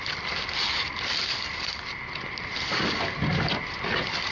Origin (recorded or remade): recorded